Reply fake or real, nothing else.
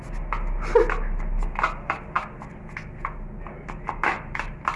real